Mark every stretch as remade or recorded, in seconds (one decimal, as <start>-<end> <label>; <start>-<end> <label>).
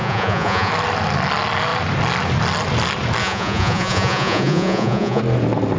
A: 0.0-0.7 remade; 0.7-3.2 recorded; 3.2-5.2 remade; 5.2-5.8 recorded